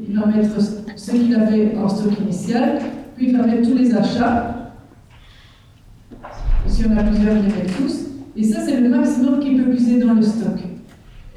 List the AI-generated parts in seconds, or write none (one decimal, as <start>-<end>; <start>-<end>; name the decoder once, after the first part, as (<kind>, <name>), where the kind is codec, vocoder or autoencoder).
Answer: 3.3-4.2 (vocoder, BigVGAN v2)